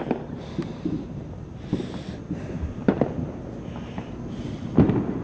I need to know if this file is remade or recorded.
recorded